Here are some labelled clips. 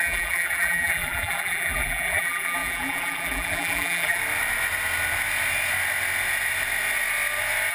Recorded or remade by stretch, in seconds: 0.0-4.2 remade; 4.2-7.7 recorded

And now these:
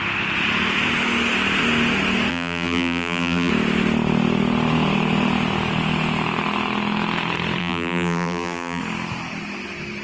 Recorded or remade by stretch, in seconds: 0.0-2.3 recorded; 2.3-3.5 remade; 3.5-7.6 recorded; 7.6-8.8 remade; 8.8-10.0 recorded

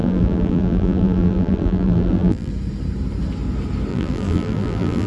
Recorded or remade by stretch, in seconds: 0.0-2.5 remade; 2.5-3.9 recorded; 3.9-5.1 remade

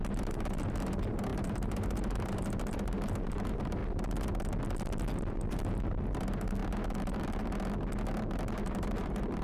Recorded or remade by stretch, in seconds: 0.0-3.8 remade; 3.8-5.5 recorded; 5.5-6.6 remade; 6.6-8.5 recorded; 8.5-9.4 remade

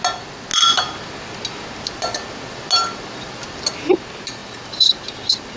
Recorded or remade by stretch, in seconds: 0.0-4.4 recorded; 4.4-5.1 remade; 5.1-5.6 recorded

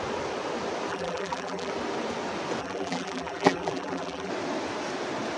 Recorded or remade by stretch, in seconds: 0.0-0.9 recorded; 0.9-1.7 remade; 1.7-2.6 recorded; 2.6-4.3 remade; 4.3-5.4 recorded

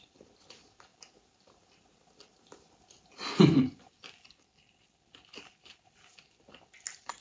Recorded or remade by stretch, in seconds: 0.0-0.9 remade; 0.9-5.0 recorded; 5.0-7.2 remade

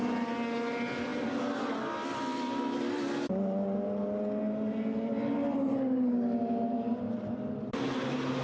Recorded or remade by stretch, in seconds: 0.0-1.1 recorded; 1.1-1.6 remade; 1.6-4.4 recorded; 4.4-6.2 remade; 6.2-8.4 recorded